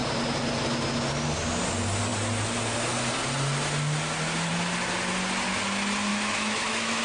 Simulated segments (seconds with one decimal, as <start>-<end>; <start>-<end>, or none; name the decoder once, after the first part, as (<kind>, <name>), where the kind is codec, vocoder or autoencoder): 6.1-7.0 (autoencoder, DAC-VAE)